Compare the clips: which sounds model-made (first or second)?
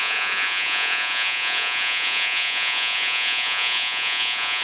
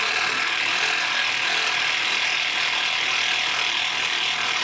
first